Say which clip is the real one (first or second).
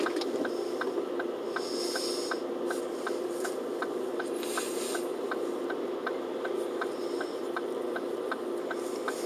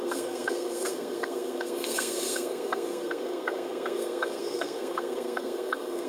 first